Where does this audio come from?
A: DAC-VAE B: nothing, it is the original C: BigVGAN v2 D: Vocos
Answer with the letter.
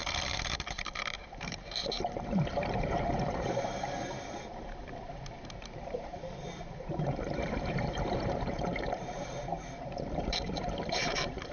C